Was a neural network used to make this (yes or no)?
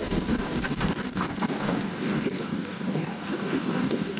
yes